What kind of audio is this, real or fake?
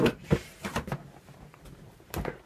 fake